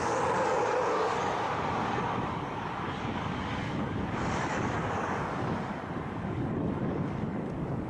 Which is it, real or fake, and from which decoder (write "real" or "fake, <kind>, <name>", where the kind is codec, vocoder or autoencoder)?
fake, codec, DAC